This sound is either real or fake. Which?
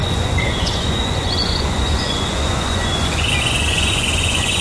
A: fake